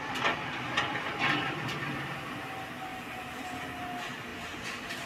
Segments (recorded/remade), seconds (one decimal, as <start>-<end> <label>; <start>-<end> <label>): 0.0-0.9 recorded; 0.9-2.1 remade; 2.1-2.9 recorded; 2.9-3.4 remade; 3.4-4.3 recorded; 4.3-5.1 remade